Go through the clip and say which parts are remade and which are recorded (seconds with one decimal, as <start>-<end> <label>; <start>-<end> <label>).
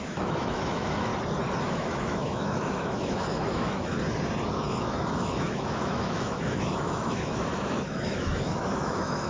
0.0-1.1 remade; 1.1-1.6 recorded; 1.6-4.0 remade; 4.0-4.5 recorded; 4.5-9.3 remade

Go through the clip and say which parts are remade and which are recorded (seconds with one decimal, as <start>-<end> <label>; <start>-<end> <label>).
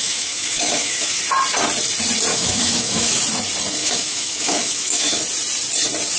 0.0-1.2 remade; 1.2-2.3 recorded; 2.3-3.2 remade; 3.2-3.8 recorded; 3.8-5.2 remade; 5.2-6.2 recorded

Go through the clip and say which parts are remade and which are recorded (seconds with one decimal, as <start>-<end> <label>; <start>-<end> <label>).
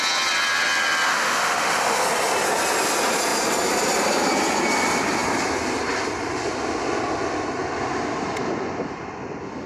0.0-1.1 recorded; 1.1-2.0 remade; 2.0-9.7 recorded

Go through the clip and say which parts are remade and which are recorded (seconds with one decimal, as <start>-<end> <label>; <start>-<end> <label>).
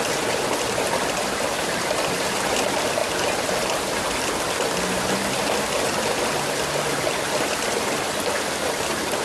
0.0-9.2 recorded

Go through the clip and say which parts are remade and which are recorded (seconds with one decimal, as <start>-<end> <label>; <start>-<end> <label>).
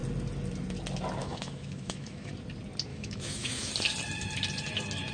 0.0-1.2 recorded; 1.2-2.3 remade; 2.3-2.9 recorded; 2.9-3.7 remade; 3.7-5.1 recorded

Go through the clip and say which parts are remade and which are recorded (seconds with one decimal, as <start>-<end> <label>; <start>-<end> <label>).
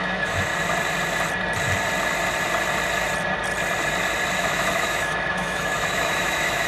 0.0-0.5 remade; 0.5-4.4 recorded; 4.4-6.7 remade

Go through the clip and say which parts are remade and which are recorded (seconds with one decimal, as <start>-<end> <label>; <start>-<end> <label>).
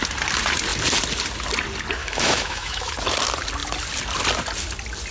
0.0-2.0 recorded; 2.0-2.9 remade; 2.9-5.1 recorded